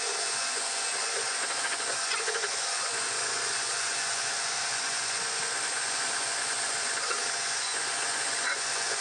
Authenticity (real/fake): fake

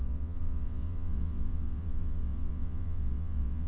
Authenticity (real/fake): fake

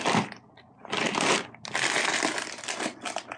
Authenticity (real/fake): real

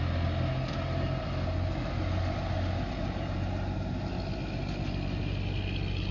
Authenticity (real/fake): real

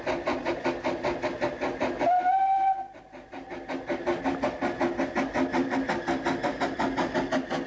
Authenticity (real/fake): real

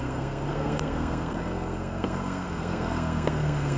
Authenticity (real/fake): fake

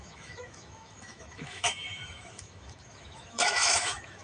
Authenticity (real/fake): fake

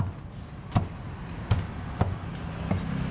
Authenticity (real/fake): real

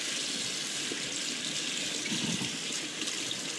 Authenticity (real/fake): real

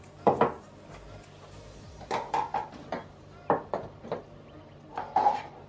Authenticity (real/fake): real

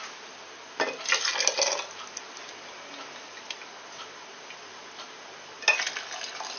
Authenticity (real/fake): real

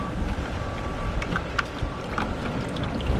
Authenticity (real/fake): real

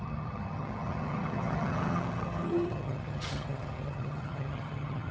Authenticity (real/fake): fake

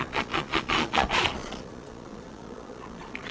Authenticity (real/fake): fake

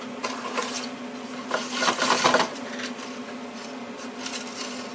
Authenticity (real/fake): real